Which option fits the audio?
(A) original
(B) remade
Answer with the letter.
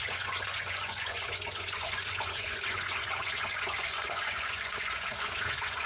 B